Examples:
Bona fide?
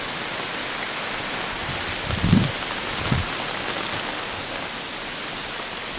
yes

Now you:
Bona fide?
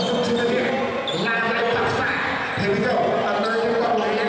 yes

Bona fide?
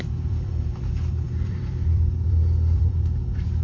no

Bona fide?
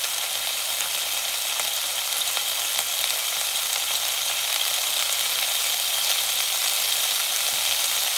yes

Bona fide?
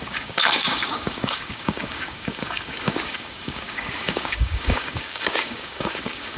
no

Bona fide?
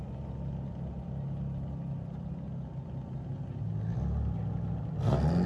yes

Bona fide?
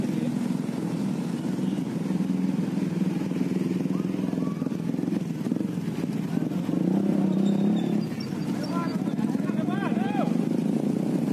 yes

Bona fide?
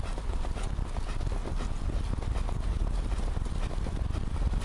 yes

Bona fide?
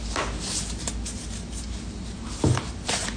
yes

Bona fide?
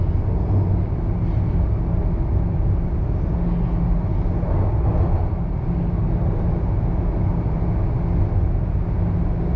yes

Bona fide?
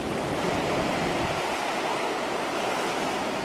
no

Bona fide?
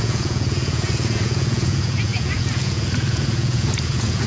no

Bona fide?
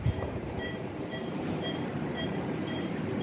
no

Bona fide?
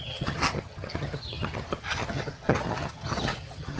no